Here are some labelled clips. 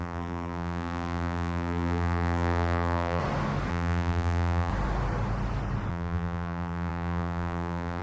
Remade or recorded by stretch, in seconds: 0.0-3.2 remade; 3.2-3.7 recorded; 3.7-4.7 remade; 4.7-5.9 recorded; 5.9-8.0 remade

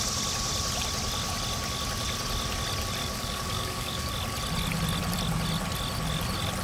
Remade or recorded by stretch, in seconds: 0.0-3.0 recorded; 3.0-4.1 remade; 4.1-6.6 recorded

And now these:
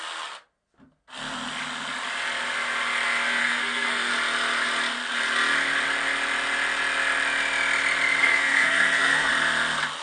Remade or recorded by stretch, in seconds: 0.0-3.4 recorded; 3.4-4.1 remade; 4.1-8.2 recorded; 8.2-9.3 remade; 9.3-10.0 recorded